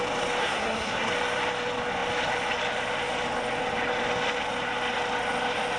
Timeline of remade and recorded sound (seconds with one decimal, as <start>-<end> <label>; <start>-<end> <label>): 0.0-0.4 recorded; 0.4-1.1 remade; 1.1-5.8 recorded